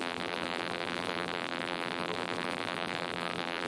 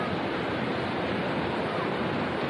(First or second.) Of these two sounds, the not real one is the first